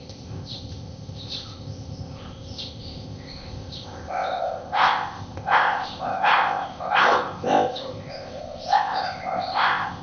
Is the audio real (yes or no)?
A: no